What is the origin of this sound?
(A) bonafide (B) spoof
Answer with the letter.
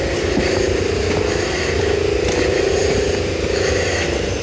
A